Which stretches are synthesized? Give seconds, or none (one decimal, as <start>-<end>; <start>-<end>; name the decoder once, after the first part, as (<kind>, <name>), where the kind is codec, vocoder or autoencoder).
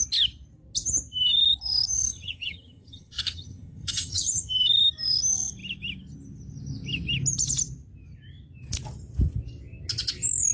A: 2.1-4.5 (vocoder, HiFi-GAN)